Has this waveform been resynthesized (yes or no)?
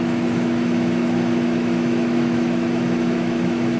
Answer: yes